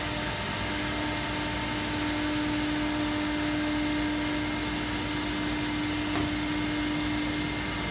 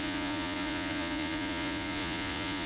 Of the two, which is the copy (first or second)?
second